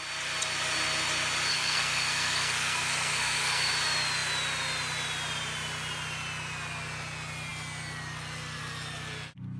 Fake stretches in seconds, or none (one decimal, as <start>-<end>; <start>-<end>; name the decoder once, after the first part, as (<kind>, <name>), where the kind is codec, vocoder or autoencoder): 1.5-3.7 (codec, SNAC)